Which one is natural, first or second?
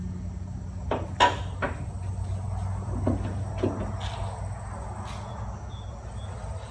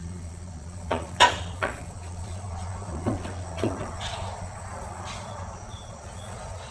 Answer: first